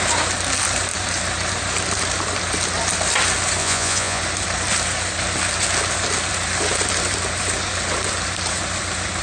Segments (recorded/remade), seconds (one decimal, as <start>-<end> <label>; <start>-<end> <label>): 0.0-3.6 recorded; 3.6-4.2 remade; 4.2-9.2 recorded